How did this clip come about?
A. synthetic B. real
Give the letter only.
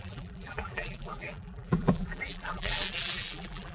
A